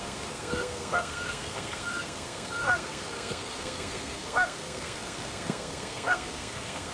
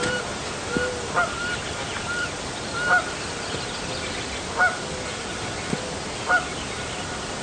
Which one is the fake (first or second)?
first